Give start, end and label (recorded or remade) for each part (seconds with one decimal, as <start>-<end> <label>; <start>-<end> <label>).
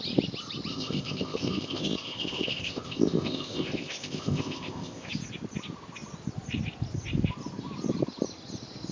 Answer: 0.0-0.7 recorded; 0.7-5.1 remade; 5.1-8.9 recorded